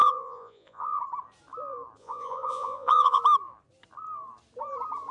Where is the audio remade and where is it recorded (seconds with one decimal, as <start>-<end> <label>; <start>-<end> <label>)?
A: 0.0-1.0 remade; 1.0-2.0 recorded; 2.0-3.2 remade; 3.2-5.1 recorded

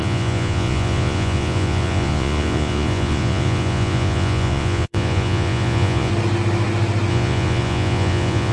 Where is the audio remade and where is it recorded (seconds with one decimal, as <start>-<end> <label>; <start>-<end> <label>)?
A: 0.0-6.1 remade; 6.1-7.1 recorded; 7.1-8.5 remade